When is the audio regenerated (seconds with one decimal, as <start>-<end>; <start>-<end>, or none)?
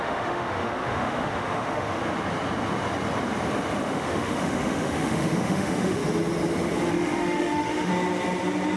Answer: 0.0-2.0; 3.8-6.0; 6.9-7.9